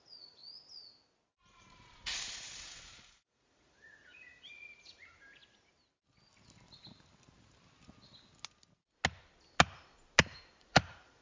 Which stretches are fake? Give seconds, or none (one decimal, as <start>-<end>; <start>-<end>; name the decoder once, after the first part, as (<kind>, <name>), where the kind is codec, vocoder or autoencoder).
0.0-0.4 (vocoder, Vocos); 1.3-5.4; 10.6-11.2